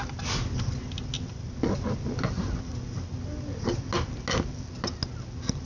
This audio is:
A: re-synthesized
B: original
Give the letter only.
B